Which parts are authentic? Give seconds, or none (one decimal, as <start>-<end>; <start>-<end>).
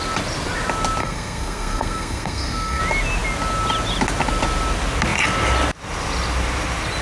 0.0-1.0; 2.8-7.0